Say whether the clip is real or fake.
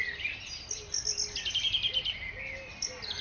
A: real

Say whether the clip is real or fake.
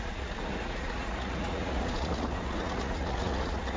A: fake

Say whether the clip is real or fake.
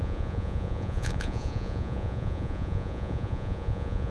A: fake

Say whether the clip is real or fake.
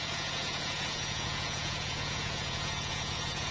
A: fake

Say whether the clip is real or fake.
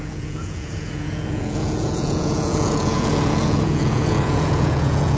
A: fake